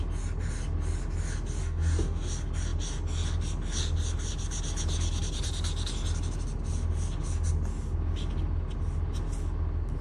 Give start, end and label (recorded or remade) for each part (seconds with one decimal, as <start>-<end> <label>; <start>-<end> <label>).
0.0-1.6 recorded; 1.6-2.3 remade; 2.3-10.0 recorded